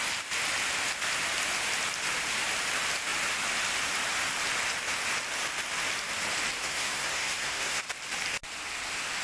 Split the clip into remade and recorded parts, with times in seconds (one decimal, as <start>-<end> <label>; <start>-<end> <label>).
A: 0.0-6.6 recorded; 6.6-7.8 remade; 7.8-9.2 recorded